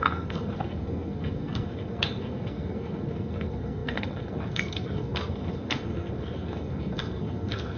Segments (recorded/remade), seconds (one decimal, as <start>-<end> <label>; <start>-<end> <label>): 0.0-7.8 remade